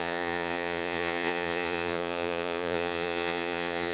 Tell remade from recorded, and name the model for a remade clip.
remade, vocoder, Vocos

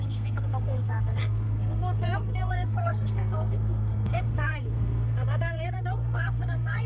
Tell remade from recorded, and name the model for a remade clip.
remade, codec, SNAC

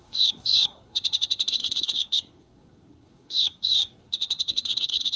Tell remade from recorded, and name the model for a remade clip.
remade, codec, SNAC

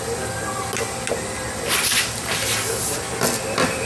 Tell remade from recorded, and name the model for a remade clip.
recorded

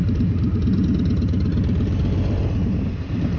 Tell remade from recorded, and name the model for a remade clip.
remade, vocoder, BigVGAN v2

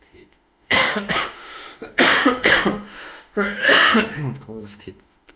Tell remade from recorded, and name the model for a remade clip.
remade, autoencoder, DAC-VAE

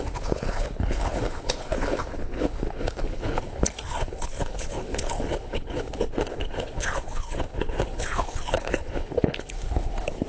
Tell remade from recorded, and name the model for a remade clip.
remade, codec, HILCodec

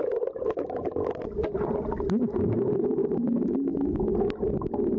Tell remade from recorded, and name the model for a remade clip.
recorded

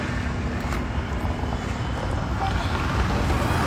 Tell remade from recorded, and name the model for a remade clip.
recorded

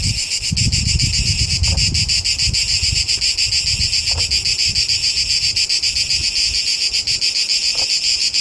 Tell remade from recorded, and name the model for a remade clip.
recorded